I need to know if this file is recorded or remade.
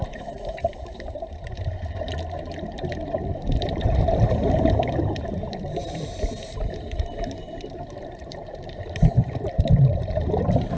remade